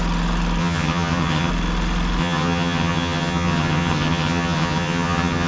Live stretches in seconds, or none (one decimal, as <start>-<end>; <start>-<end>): 0.0-0.6; 1.5-2.2